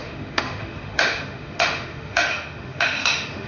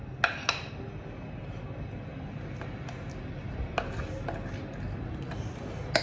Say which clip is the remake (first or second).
first